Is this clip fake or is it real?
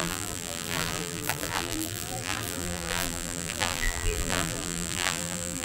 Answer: fake